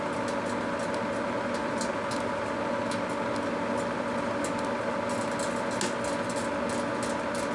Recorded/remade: recorded